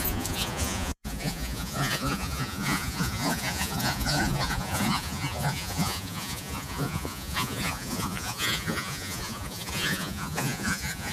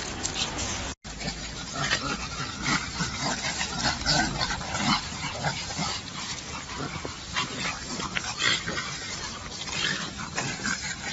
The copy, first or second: first